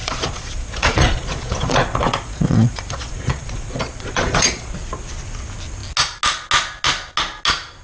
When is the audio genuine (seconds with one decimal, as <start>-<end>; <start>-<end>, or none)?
4.7-7.8